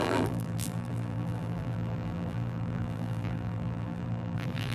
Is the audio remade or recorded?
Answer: remade